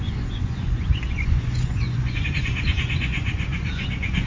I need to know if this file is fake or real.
fake